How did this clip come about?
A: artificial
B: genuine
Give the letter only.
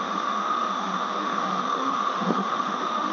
A